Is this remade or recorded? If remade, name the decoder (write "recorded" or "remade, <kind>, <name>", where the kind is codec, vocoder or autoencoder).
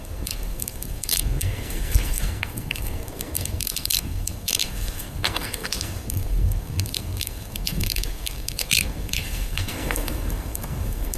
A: remade, codec, SNAC